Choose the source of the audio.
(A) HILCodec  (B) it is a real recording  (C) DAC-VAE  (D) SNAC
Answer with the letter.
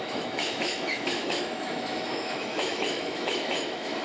C